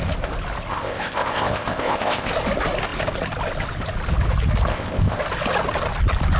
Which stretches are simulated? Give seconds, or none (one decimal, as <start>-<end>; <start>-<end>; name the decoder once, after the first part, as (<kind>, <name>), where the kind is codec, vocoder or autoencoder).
0.7-2.3 (codec, ZipCodec); 4.7-5.2